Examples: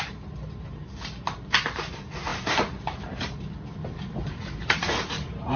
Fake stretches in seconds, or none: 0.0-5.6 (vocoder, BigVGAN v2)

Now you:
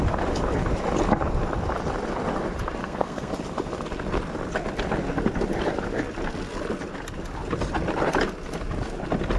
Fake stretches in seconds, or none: 2.8-3.3 (codec, SNAC)

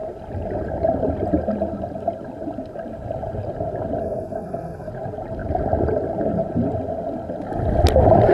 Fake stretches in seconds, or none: 4.0-4.9 (codec, SNAC)

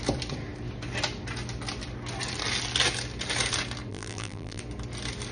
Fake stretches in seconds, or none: 3.9-4.6 (vocoder, BigVGAN v2)

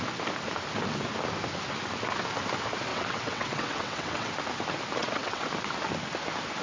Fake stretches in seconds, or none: 2.9-4.3 (vocoder, WaveNeXt); 5.0-5.5

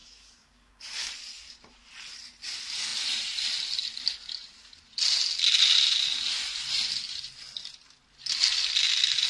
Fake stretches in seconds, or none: 0.0-1.1 (codec, DAC)

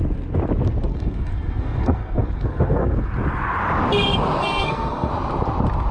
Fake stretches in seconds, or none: 0.9-3.1 (codec, SNAC); 4.4-5.1